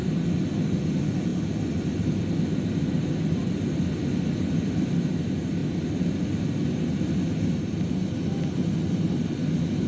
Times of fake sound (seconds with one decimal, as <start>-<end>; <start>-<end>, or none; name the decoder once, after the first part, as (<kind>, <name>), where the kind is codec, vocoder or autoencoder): none